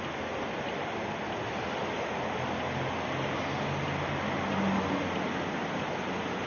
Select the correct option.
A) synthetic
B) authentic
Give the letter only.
B